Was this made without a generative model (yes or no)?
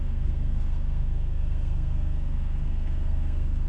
no